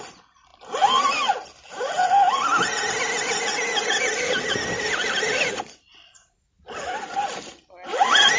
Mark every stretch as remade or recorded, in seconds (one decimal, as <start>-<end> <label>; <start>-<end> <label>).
0.0-8.4 recorded